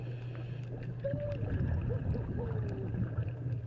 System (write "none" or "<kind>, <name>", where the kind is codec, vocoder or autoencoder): none